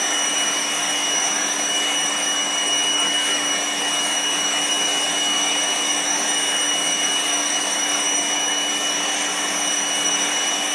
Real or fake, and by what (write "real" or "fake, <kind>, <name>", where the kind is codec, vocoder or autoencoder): fake, codec, DAC